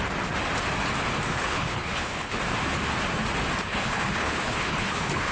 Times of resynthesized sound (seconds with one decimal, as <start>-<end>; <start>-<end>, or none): 1.3-2.4; 3.7-5.3